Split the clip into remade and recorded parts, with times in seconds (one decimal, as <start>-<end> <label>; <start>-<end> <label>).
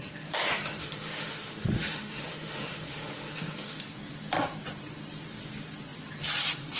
0.0-0.8 recorded; 0.8-3.8 remade; 3.8-6.8 recorded